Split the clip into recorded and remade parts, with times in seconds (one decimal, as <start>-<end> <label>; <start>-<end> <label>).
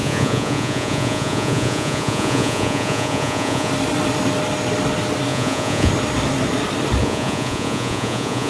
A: 0.0-3.7 remade; 3.7-5.3 recorded; 5.3-5.9 remade; 5.9-7.0 recorded; 7.0-8.5 remade